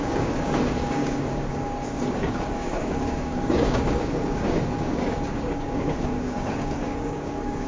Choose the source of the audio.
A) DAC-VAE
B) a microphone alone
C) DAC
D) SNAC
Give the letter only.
C